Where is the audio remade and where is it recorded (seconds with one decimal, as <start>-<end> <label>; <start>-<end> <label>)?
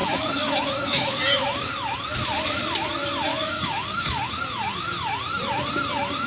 0.0-1.7 remade; 1.7-3.3 recorded; 3.3-4.3 remade; 4.3-6.3 recorded